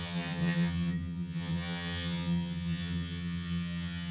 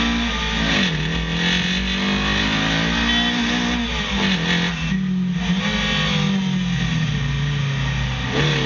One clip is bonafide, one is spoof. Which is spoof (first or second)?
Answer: first